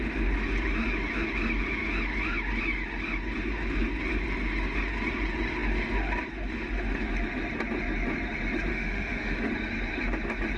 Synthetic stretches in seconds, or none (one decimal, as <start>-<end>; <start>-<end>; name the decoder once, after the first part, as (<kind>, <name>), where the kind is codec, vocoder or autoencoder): 8.7-9.5 (autoencoder, DAC-VAE)